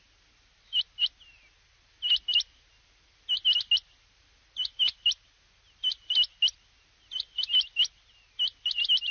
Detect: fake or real real